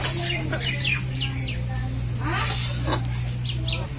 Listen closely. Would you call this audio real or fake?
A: real